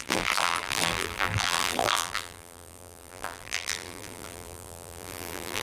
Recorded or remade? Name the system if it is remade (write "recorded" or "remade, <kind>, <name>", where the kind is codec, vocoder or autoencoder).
remade, vocoder, BigVGAN v2